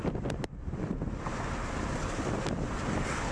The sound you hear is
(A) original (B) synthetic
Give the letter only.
A